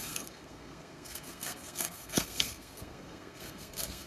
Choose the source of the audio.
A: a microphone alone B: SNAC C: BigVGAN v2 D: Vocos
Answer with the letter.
B